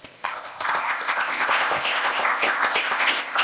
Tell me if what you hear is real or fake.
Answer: fake